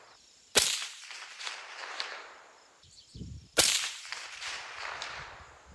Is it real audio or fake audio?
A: fake